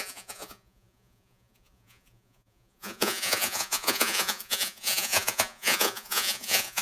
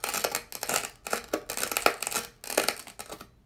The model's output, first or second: first